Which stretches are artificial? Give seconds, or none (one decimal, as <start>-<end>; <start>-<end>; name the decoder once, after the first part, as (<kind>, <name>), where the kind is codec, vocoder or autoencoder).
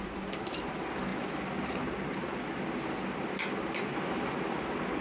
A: none